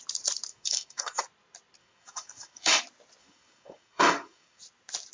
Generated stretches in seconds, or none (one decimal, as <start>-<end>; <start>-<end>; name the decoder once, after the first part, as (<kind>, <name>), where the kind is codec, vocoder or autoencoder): 0.5-1.2 (codec, DAC); 1.8-2.8; 3.2-4.6